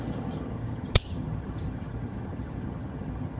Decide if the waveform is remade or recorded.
remade